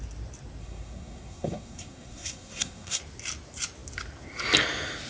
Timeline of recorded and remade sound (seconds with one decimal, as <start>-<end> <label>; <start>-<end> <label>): 0.0-0.6 recorded; 0.6-3.0 remade; 3.0-5.1 recorded